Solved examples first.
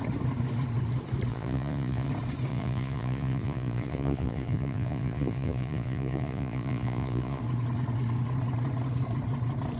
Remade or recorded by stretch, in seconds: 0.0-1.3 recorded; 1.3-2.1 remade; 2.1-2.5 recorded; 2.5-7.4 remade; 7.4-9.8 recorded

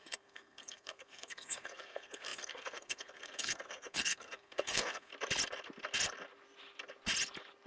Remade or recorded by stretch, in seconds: 0.0-5.1 remade; 5.1-7.7 recorded

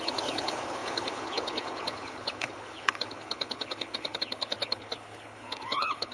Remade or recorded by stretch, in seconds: 0.0-6.1 remade

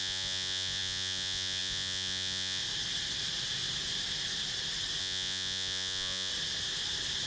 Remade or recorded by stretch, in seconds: 0.0-2.6 remade; 2.6-5.0 recorded; 5.0-6.3 remade; 6.3-7.3 recorded